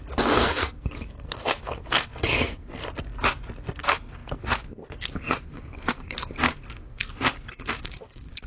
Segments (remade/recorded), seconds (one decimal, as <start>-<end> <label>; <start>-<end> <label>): 0.0-2.8 remade; 2.8-3.7 recorded; 3.7-8.5 remade